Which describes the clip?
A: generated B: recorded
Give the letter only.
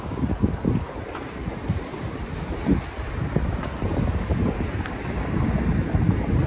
A